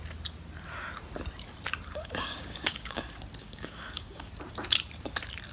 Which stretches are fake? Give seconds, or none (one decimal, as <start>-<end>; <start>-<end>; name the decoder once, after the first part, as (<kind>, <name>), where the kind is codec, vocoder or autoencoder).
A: 2.0-3.0 (codec, DAC); 3.4-4.3